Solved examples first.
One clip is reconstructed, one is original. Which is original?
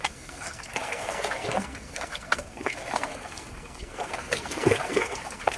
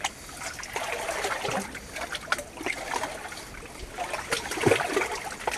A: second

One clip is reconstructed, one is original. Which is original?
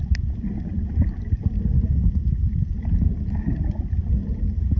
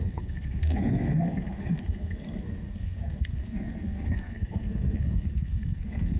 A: first